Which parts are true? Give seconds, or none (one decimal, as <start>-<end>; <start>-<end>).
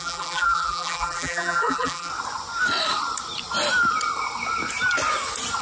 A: 2.1-5.6